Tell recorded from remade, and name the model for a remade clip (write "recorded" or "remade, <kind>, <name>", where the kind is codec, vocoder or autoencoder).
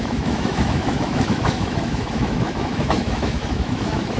remade, autoencoder, DAC-VAE